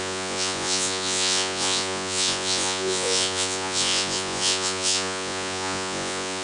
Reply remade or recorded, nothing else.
remade